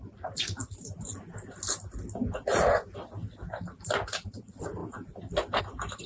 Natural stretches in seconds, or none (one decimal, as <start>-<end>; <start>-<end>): 0.0-6.1